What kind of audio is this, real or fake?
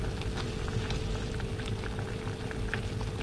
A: real